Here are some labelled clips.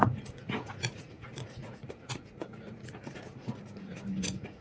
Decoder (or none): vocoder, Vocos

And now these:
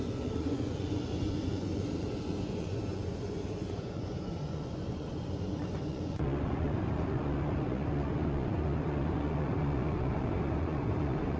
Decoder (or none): vocoder, Vocos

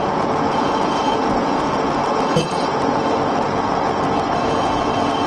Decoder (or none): vocoder, Vocos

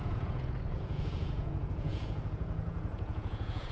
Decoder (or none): vocoder, Vocos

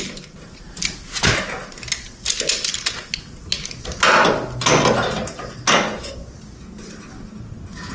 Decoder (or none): none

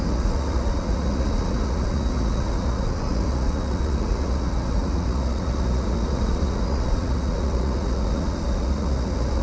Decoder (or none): vocoder, Vocos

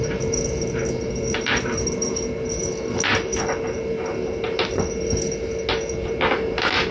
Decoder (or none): none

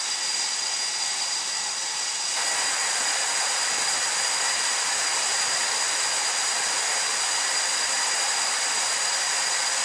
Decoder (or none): none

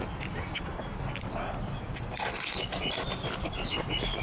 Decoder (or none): none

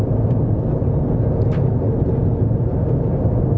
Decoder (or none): none